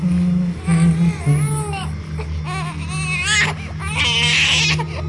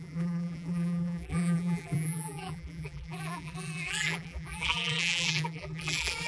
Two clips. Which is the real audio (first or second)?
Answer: first